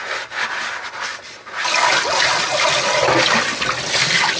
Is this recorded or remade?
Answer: recorded